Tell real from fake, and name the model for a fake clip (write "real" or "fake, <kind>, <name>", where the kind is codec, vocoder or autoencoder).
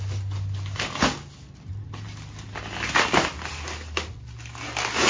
real